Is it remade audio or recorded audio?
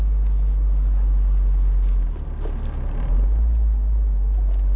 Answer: recorded